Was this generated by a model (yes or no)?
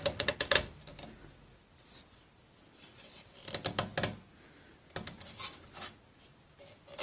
no